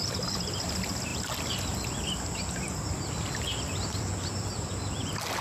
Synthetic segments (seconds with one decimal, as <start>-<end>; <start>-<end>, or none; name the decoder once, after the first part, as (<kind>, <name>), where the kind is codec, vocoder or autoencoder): none